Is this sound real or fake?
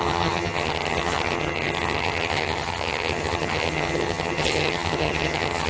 fake